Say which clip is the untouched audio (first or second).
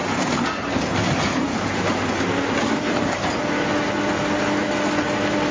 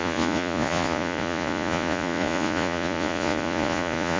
first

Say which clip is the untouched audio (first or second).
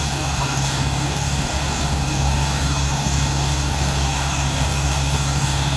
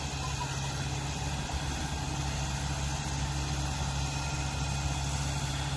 second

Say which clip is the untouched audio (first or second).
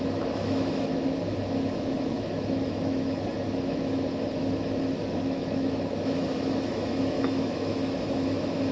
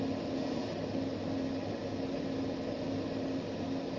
second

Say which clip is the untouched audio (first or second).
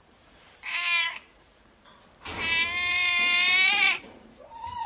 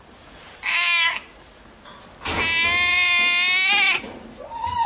second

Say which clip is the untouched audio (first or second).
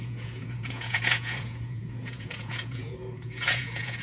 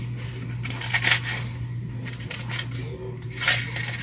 second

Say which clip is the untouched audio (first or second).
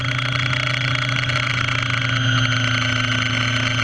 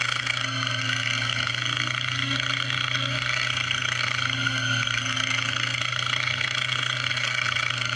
first